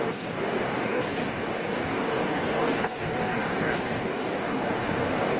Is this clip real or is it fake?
fake